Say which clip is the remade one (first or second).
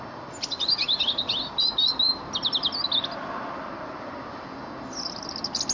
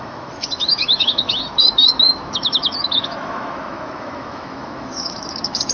second